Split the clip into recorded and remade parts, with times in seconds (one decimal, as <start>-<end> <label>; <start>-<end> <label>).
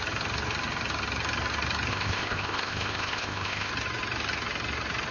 0.0-1.9 recorded; 1.9-3.7 remade; 3.7-5.1 recorded